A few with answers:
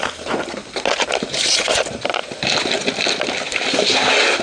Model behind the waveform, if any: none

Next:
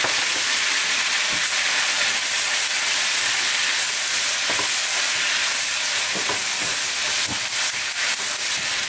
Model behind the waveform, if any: none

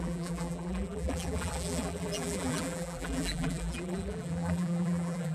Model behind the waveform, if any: vocoder, BigVGAN v2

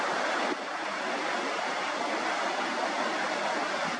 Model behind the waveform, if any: none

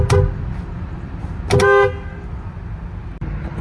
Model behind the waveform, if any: none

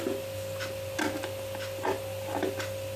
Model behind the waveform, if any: none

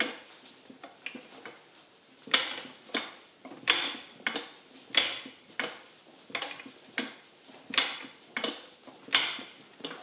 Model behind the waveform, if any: none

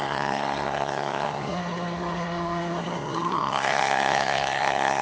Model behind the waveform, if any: codec, SNAC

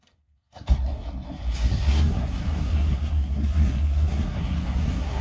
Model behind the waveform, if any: codec, SNAC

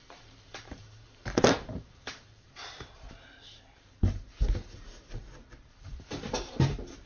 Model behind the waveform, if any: vocoder, BigVGAN v2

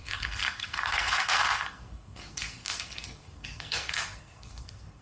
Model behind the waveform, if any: codec, SNAC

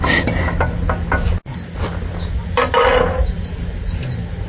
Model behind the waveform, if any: none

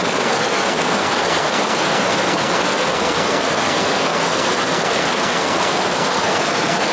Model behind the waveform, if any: codec, SNAC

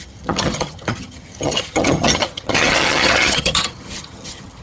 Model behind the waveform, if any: vocoder, HiFi-GAN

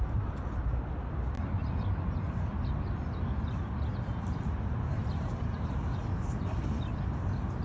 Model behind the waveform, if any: none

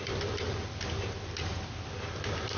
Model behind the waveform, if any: none